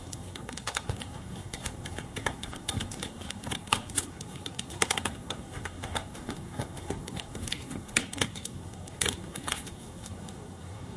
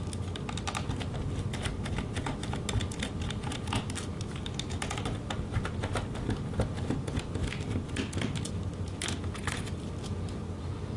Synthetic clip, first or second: first